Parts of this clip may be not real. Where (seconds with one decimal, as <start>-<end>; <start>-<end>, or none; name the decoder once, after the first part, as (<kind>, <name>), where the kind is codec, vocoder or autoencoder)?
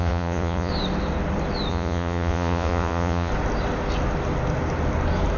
0.0-0.7 (vocoder, Vocos); 1.7-3.3